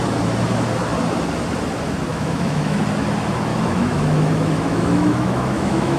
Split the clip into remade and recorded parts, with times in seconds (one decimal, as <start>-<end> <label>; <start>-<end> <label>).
0.0-2.1 recorded; 2.1-2.8 remade; 2.8-3.5 recorded; 3.5-6.0 remade